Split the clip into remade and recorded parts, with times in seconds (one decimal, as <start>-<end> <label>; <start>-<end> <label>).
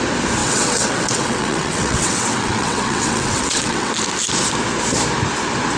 0.0-0.4 recorded; 0.4-3.9 remade; 3.9-5.8 recorded